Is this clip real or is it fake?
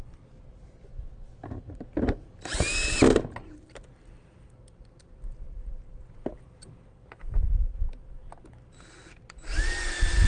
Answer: real